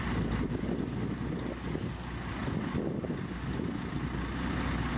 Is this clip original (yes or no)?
yes